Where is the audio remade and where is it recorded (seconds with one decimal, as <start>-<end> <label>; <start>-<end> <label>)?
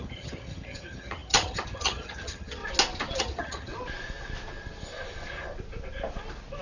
0.0-2.6 remade; 2.6-3.2 recorded; 3.2-3.7 remade; 3.7-6.6 recorded